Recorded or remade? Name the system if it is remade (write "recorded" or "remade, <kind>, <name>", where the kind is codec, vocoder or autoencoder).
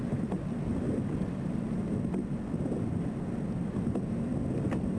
recorded